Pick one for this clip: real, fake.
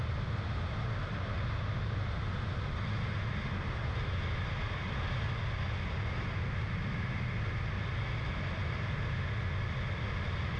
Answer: real